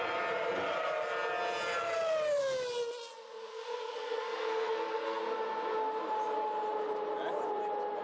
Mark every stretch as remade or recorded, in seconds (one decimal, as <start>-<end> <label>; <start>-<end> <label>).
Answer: 0.0-3.5 recorded; 3.5-5.2 remade; 5.2-8.0 recorded